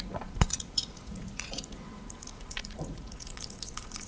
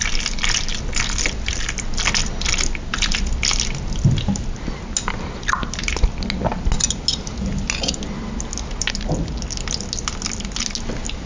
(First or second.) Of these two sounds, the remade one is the first